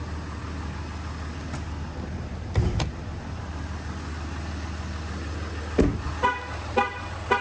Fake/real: real